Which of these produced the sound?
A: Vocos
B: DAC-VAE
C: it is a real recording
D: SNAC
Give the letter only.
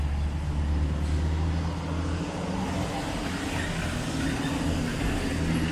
C